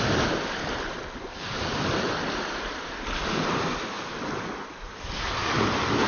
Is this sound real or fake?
real